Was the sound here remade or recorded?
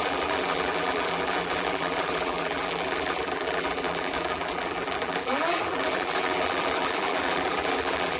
remade